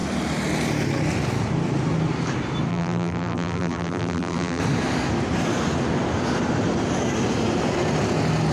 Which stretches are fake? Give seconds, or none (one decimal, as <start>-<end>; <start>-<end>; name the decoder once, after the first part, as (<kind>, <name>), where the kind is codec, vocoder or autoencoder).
2.7-4.6 (vocoder, BigVGAN v2)